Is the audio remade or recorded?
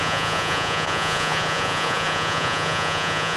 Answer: remade